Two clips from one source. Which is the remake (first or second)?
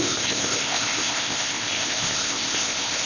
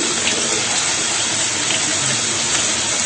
first